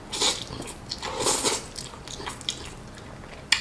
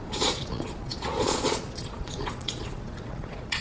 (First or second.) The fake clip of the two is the second